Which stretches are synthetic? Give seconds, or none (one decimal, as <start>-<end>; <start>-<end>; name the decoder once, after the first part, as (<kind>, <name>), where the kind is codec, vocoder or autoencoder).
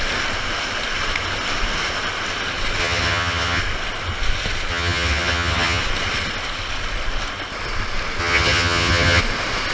2.8-3.6 (vocoder, HiFi-GAN); 4.7-5.8; 8.2-9.2